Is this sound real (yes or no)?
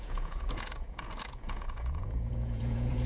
no